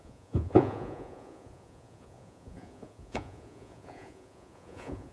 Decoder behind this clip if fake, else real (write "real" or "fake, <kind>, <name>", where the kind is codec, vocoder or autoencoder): fake, vocoder, Vocos